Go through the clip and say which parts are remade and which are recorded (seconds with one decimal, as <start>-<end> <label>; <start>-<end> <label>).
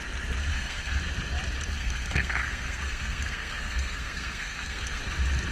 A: 0.0-0.5 recorded; 0.5-1.0 remade; 1.0-1.7 recorded; 1.7-5.0 remade; 5.0-5.5 recorded